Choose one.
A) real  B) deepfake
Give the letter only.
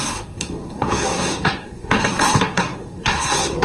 B